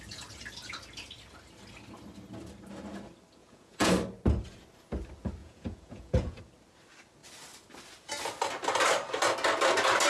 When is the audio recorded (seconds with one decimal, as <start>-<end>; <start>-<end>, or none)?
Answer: 0.0-3.4; 3.9-5.4; 6.4-10.1